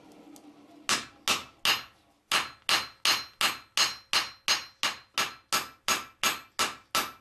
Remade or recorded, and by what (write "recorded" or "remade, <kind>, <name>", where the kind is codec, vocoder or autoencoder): recorded